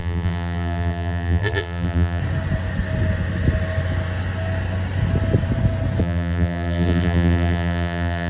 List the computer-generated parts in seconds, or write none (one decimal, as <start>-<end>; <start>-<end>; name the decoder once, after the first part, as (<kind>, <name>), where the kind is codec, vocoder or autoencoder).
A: 0.0-2.2 (vocoder, BigVGAN v2); 6.0-8.3